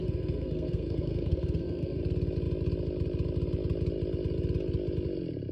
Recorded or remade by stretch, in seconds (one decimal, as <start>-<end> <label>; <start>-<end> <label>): 0.0-2.0 remade; 2.0-5.5 recorded